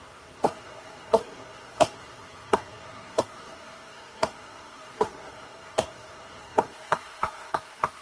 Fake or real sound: fake